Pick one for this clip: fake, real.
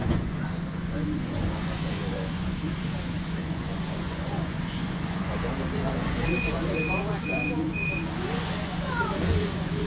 fake